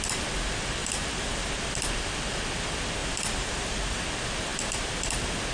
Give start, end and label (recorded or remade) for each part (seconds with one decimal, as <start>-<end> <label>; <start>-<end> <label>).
0.0-0.8 recorded; 0.8-1.5 remade; 1.5-3.0 recorded; 3.0-3.8 remade; 3.8-5.5 recorded